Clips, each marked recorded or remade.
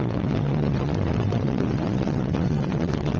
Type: remade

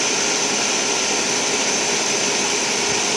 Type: recorded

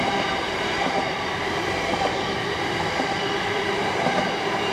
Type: remade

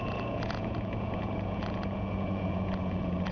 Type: remade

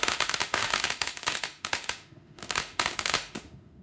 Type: remade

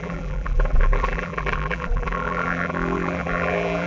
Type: remade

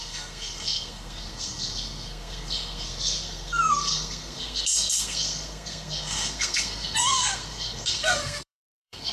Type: remade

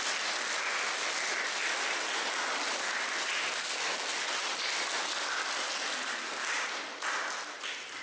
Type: recorded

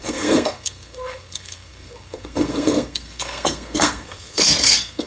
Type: remade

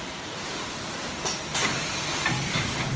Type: remade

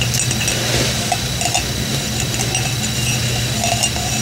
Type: recorded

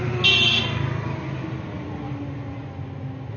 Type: recorded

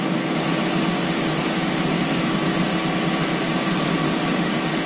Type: recorded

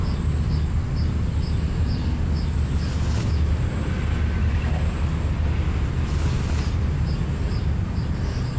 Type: recorded